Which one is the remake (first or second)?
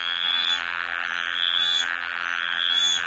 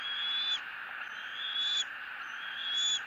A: first